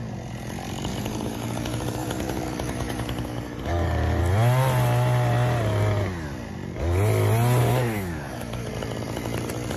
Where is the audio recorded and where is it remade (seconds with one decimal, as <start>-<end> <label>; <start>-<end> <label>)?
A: 0.0-0.9 recorded; 0.9-4.2 remade; 4.2-7.6 recorded; 7.6-8.7 remade; 8.7-9.8 recorded

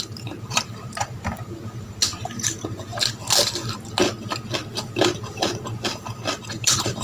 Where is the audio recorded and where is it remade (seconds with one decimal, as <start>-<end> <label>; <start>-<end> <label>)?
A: 0.0-2.9 remade; 2.9-6.5 recorded; 6.5-7.0 remade